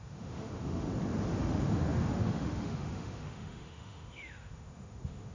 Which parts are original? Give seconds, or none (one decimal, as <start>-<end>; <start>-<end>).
0.9-1.4